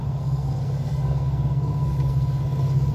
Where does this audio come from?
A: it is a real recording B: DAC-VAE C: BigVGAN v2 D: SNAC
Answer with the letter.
D